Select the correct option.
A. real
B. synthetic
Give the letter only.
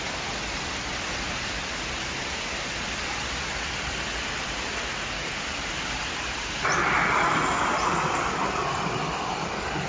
A